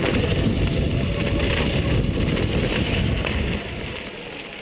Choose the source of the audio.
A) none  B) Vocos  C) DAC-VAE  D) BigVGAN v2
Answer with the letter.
A